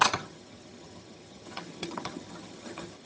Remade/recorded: remade